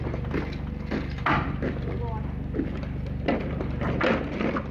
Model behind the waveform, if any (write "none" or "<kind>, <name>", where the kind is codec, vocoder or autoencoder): none